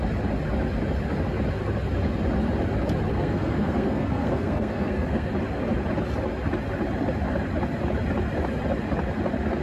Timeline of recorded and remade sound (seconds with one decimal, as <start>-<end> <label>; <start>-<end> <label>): 0.0-3.1 recorded; 3.1-5.3 remade; 5.3-9.6 recorded